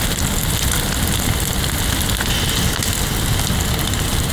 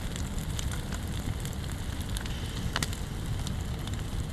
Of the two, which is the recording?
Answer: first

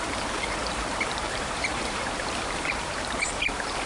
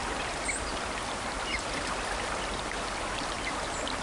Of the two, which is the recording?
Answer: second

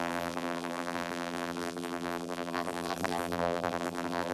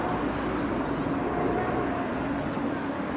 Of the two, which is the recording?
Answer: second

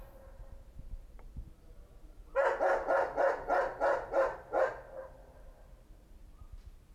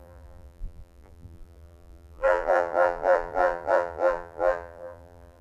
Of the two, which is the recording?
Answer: first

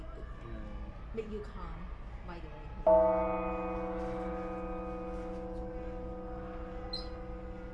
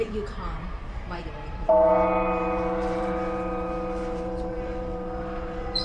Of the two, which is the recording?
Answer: first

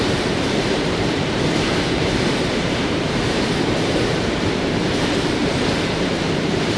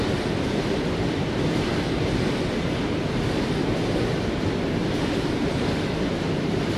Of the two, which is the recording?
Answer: second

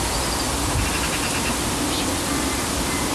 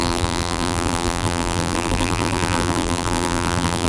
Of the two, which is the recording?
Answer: first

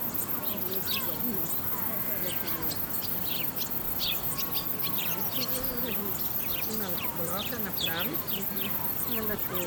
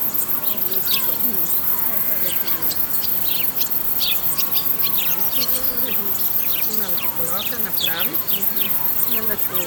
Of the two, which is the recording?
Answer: first